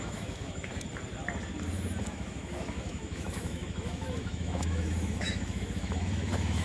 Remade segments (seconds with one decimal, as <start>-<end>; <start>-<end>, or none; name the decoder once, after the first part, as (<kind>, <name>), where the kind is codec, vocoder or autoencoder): 0.0-0.7 (autoencoder, DAC-VAE); 2.0-6.6